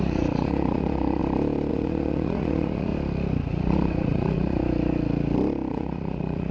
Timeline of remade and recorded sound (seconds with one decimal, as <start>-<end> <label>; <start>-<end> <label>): 0.0-1.2 remade; 1.2-1.7 recorded; 1.7-2.9 remade; 2.9-3.5 recorded; 3.5-4.6 remade; 4.6-5.7 recorded; 5.7-6.5 remade